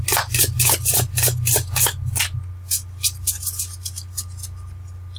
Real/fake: real